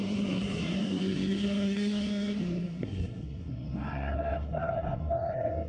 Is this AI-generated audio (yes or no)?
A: yes